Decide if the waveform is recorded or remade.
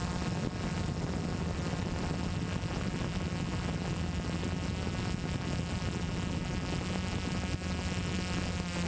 recorded